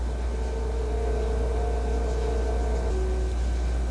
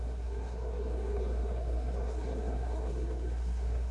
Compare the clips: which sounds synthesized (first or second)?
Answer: second